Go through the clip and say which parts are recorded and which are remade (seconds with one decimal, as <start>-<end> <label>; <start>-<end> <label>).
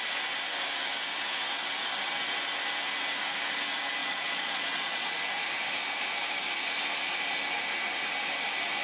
0.0-4.0 recorded; 4.0-5.1 remade; 5.1-8.8 recorded